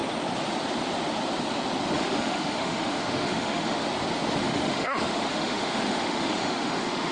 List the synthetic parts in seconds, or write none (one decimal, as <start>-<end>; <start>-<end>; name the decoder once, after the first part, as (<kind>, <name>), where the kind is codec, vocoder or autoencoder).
1.9-3.8 (autoencoder, DAC-VAE); 4.4-7.1